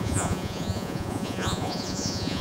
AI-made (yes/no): yes